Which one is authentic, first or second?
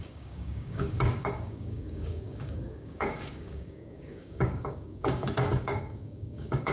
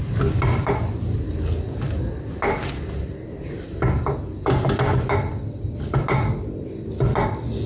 second